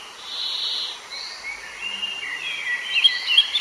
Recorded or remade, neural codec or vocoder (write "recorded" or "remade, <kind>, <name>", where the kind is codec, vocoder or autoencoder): recorded